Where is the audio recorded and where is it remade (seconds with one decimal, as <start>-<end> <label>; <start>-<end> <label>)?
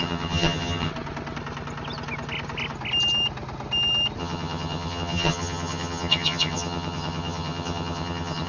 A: 0.0-0.9 remade; 0.9-4.2 recorded; 4.2-8.5 remade